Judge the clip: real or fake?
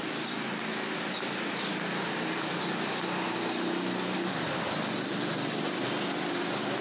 real